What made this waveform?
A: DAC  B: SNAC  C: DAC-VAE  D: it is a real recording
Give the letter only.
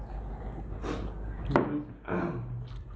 D